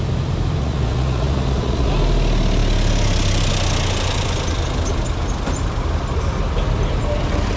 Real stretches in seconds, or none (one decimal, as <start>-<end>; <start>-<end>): 0.0-0.6; 1.9-7.6